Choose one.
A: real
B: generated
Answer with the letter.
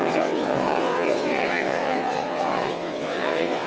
B